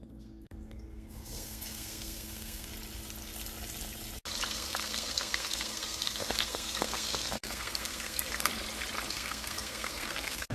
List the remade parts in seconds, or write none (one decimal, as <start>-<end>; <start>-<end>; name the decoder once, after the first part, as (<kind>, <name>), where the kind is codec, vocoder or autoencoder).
0.0-2.7 (codec, SNAC); 4.5-8.5; 9.1-10.5

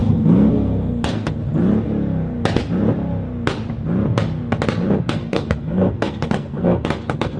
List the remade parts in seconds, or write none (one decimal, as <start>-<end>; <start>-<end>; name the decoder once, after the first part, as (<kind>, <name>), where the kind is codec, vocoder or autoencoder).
0.0-1.4 (codec, SNAC); 5.0-7.4

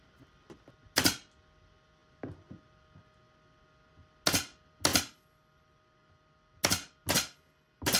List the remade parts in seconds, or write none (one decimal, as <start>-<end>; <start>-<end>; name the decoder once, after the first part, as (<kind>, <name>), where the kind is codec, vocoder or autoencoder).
none

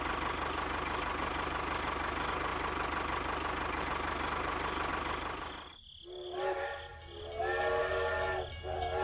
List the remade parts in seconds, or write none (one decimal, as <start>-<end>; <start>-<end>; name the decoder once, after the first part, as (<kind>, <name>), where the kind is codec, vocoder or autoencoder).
none

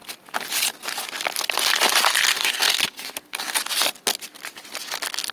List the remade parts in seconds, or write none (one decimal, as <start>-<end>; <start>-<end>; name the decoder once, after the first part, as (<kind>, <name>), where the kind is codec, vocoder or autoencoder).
2.3-3.6 (codec, SNAC)